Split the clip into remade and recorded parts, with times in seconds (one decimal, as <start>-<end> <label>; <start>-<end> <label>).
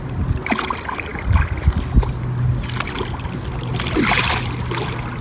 0.0-5.2 recorded